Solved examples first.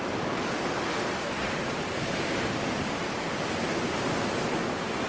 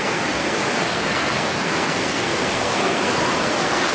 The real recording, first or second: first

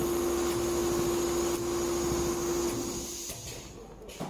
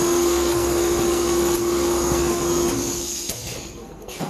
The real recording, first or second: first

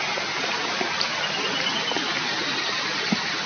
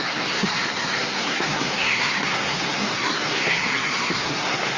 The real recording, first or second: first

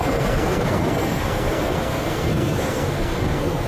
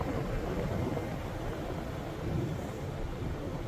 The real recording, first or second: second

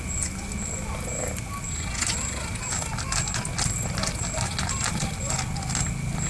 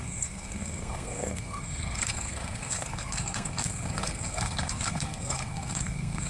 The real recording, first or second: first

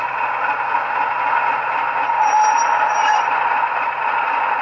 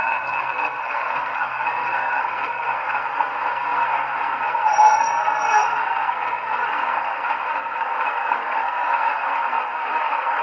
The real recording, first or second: first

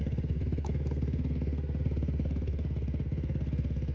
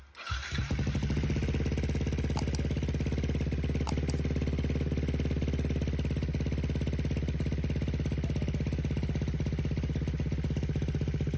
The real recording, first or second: second